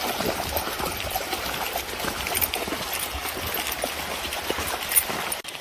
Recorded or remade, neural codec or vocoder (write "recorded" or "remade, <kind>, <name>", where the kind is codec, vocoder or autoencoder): recorded